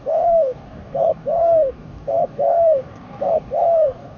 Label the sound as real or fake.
fake